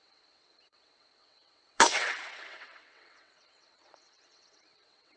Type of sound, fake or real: fake